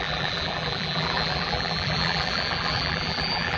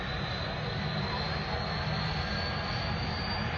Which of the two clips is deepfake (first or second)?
first